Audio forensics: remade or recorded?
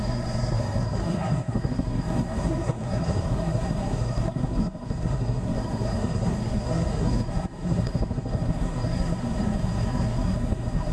remade